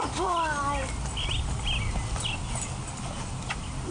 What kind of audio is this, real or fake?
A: real